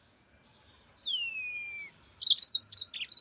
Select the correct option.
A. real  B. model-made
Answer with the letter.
A